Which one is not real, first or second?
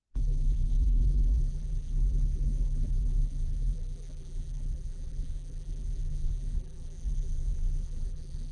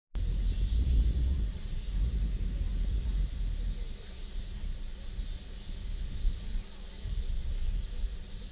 first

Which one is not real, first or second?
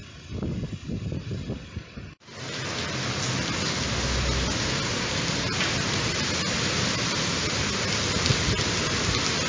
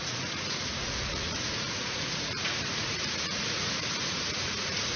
second